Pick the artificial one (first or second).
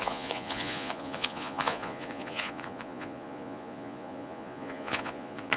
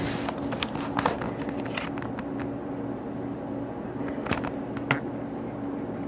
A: first